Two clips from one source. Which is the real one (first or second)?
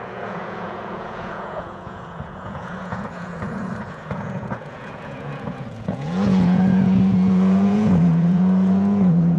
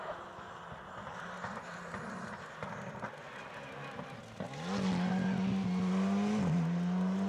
second